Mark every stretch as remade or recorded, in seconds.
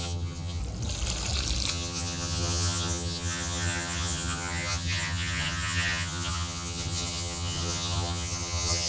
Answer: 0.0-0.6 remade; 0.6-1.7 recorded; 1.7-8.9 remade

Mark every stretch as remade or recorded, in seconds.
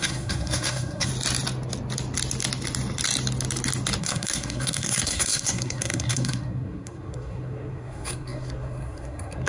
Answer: 0.0-1.1 remade; 1.1-4.0 recorded; 4.0-9.5 remade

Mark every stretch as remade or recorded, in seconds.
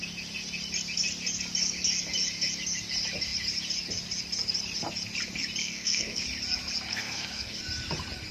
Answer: 0.0-5.6 recorded; 5.6-6.2 remade; 6.2-6.9 recorded; 6.9-7.6 remade; 7.6-8.3 recorded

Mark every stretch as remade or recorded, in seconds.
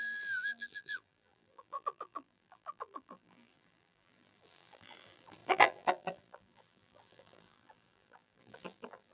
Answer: 0.0-9.1 remade